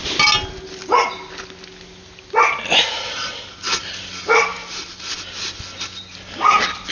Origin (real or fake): real